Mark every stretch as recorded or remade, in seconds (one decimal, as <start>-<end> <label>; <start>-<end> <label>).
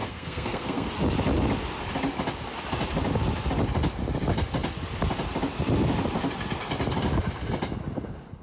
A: 0.0-0.9 remade; 0.9-8.4 recorded